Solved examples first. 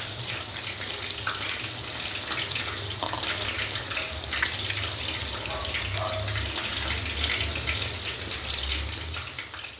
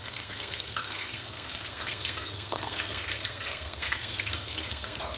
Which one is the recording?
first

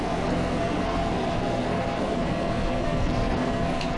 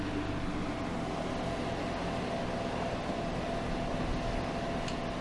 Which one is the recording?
second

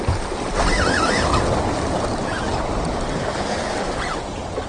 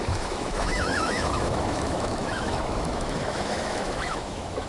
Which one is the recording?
first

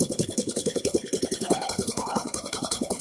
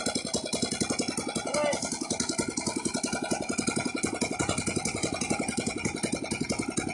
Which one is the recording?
second